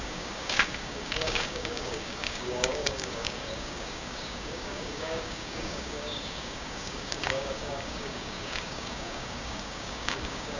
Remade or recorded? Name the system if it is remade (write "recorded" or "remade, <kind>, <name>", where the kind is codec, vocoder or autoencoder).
remade, codec, DAC